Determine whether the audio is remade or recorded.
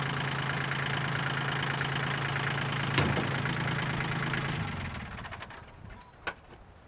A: recorded